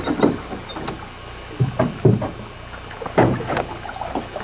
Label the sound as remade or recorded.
recorded